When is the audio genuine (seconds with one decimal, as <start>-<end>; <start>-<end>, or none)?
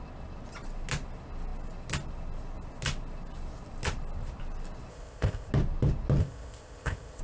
0.0-4.9; 5.5-6.2